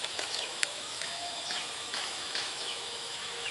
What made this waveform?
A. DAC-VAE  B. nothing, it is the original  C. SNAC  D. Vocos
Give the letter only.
A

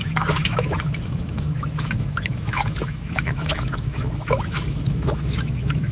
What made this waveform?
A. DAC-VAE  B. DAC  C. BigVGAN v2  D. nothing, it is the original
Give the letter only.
A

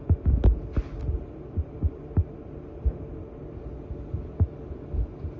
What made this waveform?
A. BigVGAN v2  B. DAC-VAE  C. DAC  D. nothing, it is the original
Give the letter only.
D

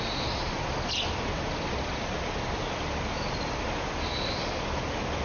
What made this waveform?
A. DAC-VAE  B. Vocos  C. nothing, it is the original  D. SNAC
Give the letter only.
C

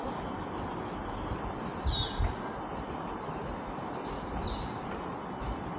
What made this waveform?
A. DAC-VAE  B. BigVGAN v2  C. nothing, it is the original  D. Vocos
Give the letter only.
C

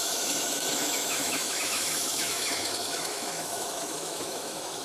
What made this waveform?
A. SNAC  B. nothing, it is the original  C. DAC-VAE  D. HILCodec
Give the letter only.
C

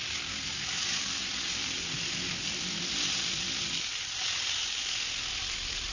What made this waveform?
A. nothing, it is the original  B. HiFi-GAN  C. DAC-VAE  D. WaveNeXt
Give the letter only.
A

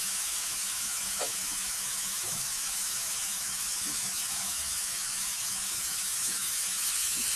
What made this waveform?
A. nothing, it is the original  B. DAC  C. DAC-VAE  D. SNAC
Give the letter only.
C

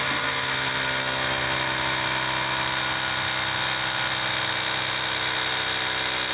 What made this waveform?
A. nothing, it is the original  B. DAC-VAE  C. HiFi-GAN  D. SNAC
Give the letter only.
A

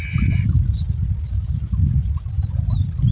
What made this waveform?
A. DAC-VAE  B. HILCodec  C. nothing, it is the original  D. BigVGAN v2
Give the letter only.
C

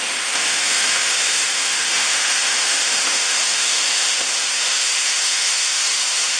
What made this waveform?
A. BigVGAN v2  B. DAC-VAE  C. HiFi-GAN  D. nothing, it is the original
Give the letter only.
B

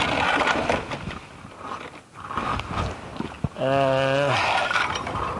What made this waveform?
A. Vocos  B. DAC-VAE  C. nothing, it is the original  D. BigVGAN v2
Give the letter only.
C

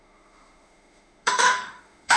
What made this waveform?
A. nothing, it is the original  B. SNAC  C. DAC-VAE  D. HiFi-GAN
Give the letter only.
C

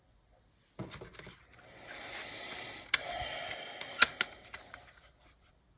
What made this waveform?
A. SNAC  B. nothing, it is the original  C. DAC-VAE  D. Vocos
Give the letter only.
B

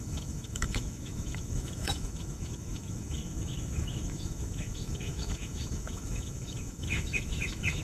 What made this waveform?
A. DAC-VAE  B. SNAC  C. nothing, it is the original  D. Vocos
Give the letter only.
A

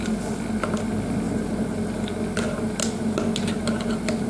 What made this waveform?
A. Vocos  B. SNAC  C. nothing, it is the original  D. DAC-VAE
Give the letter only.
C